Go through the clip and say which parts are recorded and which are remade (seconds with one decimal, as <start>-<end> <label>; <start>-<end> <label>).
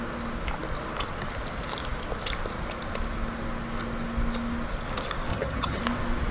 0.0-5.3 recorded; 5.3-5.8 remade; 5.8-6.3 recorded